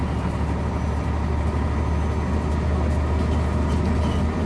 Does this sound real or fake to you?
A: real